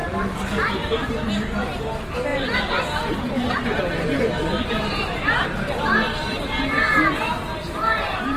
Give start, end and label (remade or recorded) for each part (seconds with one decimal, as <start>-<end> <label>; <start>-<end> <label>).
0.0-2.3 recorded; 2.3-7.1 remade; 7.1-8.4 recorded